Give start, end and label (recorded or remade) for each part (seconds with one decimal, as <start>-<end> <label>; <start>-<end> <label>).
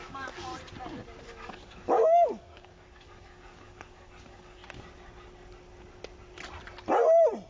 0.0-0.5 remade; 0.5-1.3 recorded; 1.3-4.6 remade; 4.6-7.5 recorded